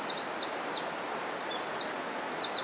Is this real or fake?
real